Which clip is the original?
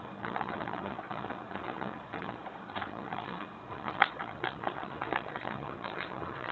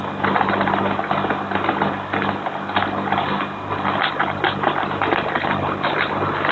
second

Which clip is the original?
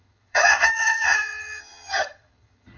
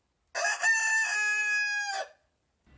second